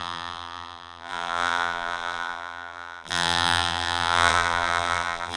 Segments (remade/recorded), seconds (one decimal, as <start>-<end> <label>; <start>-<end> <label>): 0.0-5.4 remade